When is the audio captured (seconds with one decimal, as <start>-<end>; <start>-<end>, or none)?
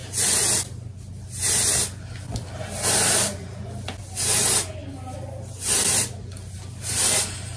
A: 0.0-7.6